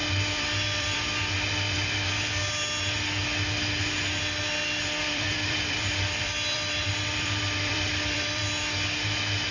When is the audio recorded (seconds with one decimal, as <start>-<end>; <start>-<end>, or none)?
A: 1.0-5.0; 8.4-9.5